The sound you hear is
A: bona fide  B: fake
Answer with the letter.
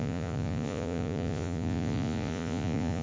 B